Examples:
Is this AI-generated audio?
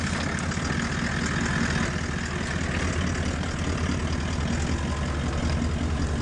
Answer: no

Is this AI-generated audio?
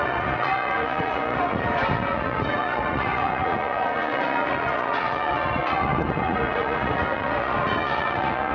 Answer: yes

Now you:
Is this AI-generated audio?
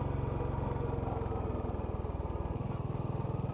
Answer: no